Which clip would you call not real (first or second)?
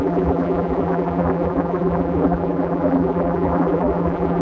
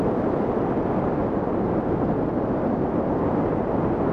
first